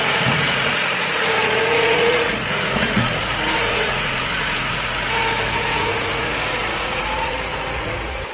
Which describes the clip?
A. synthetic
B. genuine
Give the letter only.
A